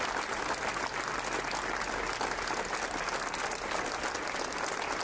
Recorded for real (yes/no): yes